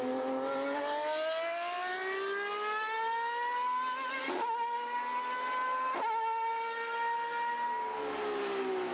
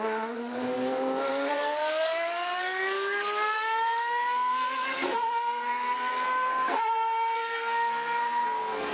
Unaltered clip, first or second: first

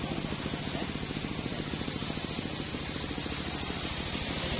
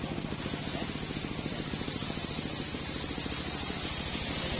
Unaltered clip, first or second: second